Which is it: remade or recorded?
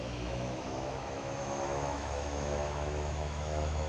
remade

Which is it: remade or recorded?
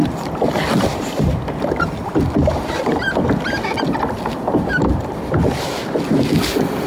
recorded